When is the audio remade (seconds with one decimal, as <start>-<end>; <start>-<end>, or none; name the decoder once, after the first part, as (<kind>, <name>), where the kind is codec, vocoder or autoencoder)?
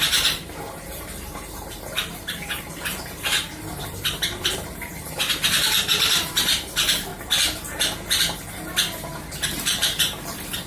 0.0-7.1 (vocoder, BigVGAN v2); 9.2-10.7